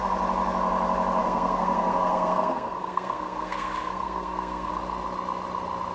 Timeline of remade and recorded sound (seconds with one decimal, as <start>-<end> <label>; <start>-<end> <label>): 0.0-1.2 recorded; 1.2-4.7 remade; 4.7-5.9 recorded